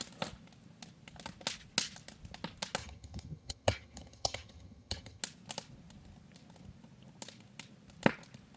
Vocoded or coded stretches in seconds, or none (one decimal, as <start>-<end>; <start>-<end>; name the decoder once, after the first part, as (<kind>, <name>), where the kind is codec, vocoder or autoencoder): 2.8-5.2 (vocoder, HiFi-GAN)